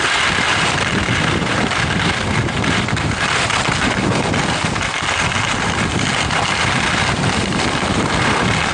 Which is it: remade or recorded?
recorded